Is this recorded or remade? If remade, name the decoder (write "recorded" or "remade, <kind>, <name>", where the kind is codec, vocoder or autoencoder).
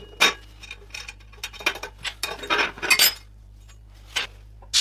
recorded